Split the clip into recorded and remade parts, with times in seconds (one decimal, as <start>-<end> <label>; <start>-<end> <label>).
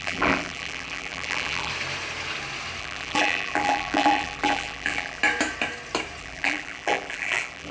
0.0-1.7 remade; 1.7-2.8 recorded; 2.8-5.2 remade; 5.2-6.2 recorded; 6.2-7.7 remade